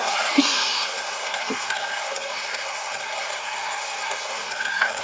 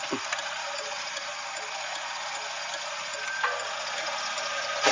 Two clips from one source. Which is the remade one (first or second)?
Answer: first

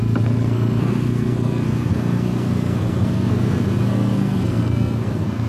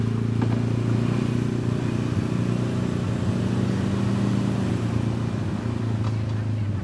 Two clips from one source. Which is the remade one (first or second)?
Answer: first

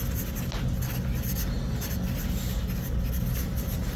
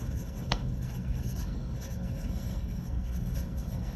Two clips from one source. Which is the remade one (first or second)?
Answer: second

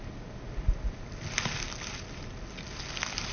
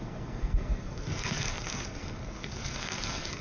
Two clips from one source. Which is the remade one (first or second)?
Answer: second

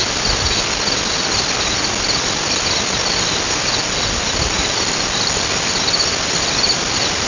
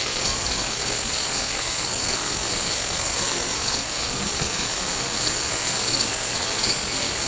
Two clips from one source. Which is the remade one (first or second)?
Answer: second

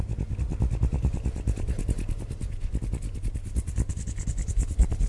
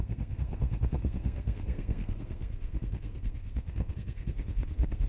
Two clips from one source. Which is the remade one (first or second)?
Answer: second